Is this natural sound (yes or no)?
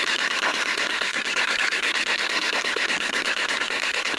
no